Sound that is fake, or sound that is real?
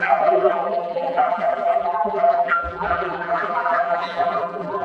fake